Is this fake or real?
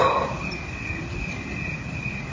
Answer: real